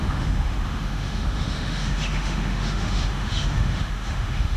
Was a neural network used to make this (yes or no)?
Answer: yes